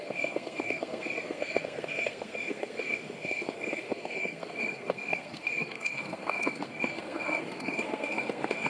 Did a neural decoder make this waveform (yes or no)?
yes